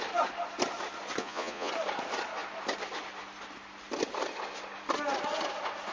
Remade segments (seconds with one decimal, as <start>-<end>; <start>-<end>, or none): 1.2-1.7